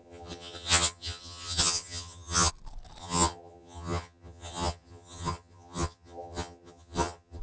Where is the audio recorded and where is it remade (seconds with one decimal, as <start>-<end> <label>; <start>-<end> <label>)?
0.0-2.5 remade; 2.5-3.0 recorded; 3.0-7.4 remade